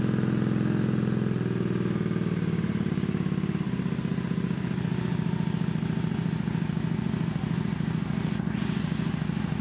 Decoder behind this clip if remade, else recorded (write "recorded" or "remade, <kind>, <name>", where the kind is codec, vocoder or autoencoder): recorded